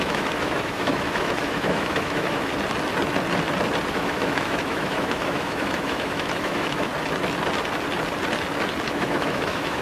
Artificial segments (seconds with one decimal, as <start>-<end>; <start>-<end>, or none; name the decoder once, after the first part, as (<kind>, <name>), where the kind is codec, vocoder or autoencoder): 0.0-2.5 (autoencoder, DAC-VAE); 3.9-6.9; 8.9-9.8